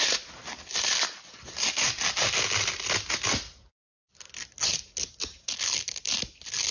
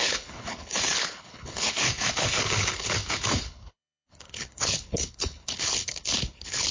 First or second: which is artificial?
second